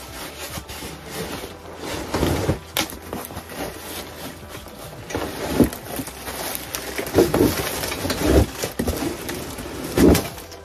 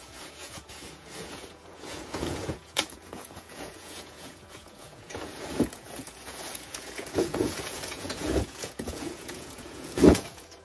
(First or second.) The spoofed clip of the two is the second